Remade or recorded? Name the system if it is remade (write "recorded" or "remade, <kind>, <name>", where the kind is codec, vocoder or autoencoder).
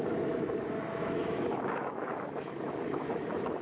remade, autoencoder, DAC-VAE